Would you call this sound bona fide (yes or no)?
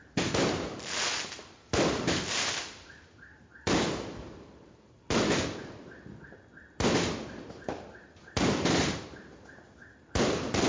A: no